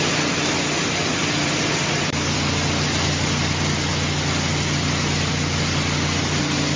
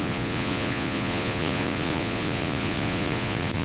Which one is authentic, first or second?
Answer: first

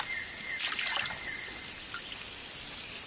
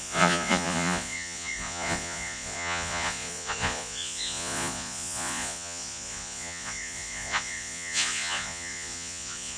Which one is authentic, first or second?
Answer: first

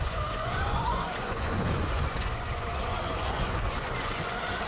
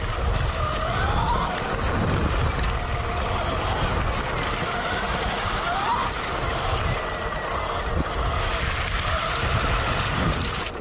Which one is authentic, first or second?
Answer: second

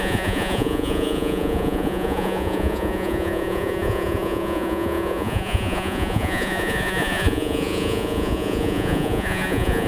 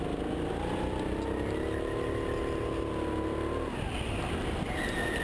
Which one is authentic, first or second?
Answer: second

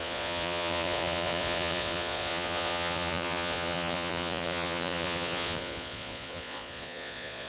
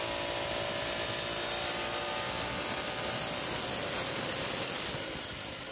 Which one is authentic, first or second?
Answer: second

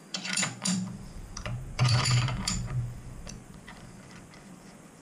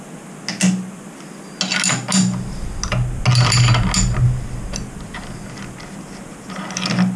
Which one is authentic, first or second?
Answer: second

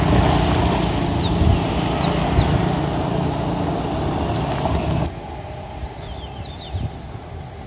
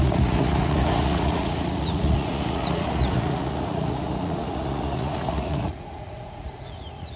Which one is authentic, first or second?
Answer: first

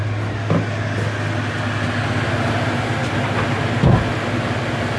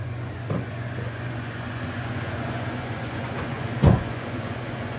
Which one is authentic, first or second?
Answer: first